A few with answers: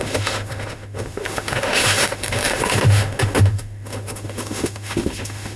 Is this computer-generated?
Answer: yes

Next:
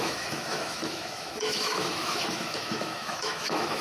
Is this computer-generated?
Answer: yes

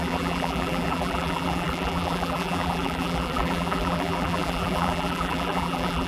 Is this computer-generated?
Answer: yes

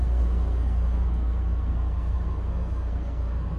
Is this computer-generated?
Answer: yes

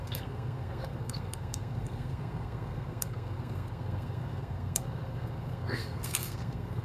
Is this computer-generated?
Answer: yes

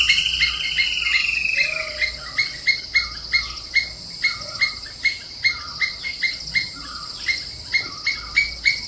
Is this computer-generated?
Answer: no